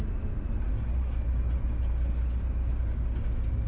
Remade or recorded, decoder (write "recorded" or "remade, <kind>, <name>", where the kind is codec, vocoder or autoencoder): recorded